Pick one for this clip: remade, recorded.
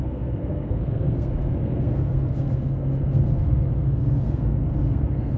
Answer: remade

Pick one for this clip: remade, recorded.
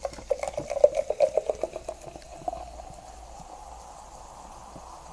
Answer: recorded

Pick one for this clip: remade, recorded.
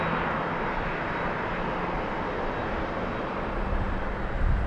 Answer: recorded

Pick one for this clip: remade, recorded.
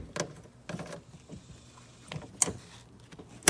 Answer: recorded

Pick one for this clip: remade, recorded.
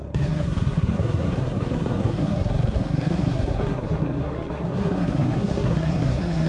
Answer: remade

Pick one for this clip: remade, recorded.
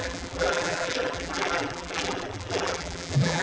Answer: remade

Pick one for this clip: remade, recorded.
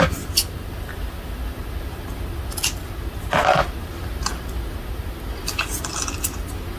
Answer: recorded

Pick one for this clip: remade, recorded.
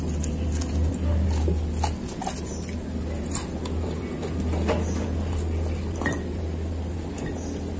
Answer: recorded